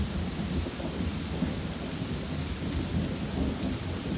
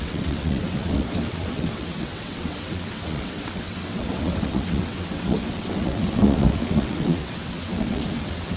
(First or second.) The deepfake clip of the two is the second